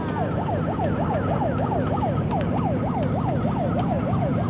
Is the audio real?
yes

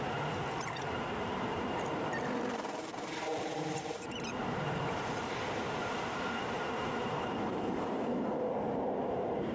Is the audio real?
no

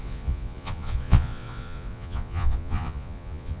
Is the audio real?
no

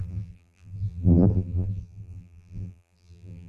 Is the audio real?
no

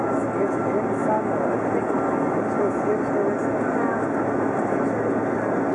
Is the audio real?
yes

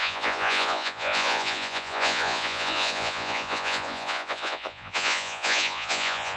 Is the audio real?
no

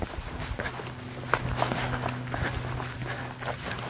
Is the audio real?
yes